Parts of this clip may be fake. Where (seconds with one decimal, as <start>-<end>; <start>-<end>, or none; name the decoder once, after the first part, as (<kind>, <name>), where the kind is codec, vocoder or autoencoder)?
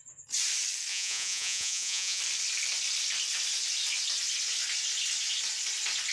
0.9-2.2 (vocoder, Vocos)